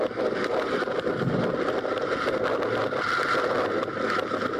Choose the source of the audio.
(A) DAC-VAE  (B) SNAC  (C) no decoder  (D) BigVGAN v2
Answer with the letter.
C